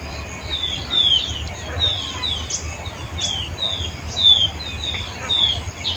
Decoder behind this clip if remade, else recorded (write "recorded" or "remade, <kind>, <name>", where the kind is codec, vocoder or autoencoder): recorded